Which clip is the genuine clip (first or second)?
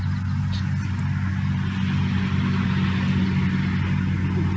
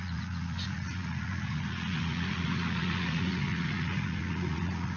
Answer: first